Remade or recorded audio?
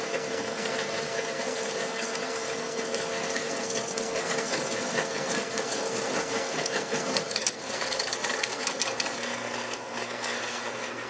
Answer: remade